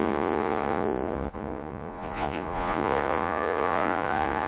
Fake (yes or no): yes